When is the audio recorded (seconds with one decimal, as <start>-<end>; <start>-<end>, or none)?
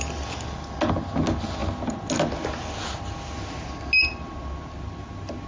0.0-5.5